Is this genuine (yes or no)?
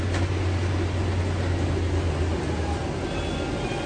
yes